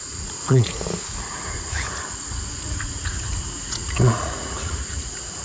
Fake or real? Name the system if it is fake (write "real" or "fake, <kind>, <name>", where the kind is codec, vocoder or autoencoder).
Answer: fake, vocoder, Vocos